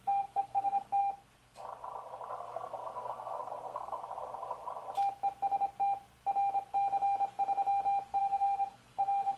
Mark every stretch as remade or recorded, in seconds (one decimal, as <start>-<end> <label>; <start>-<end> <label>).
0.0-1.0 remade; 1.0-2.3 recorded; 2.3-4.0 remade; 4.0-8.2 recorded; 8.2-9.4 remade